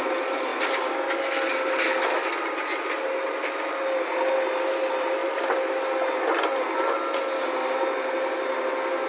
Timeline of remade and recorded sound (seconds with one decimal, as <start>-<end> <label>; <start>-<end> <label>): 0.0-9.1 recorded